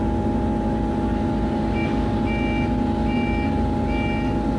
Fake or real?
real